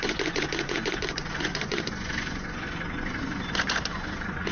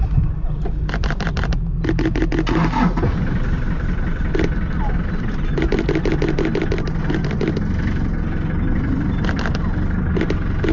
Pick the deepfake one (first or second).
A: first